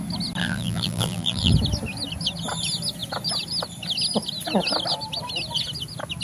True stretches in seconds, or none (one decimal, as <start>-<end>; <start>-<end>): 0.0-0.4; 1.5-6.2